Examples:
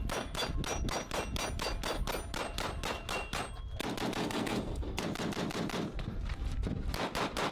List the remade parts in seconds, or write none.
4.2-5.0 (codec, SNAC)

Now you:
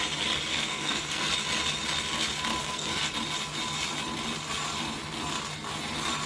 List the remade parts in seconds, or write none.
0.5-1.3 (codec, SNAC); 2.6-3.1

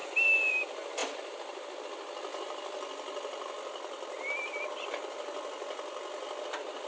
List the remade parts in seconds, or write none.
none

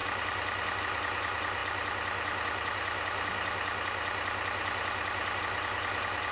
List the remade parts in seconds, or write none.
none